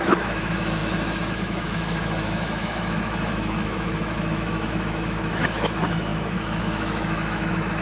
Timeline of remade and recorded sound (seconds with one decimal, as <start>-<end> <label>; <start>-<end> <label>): 0.0-7.8 remade